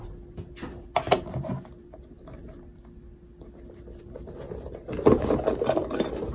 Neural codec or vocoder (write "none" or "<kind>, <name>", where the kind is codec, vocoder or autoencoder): none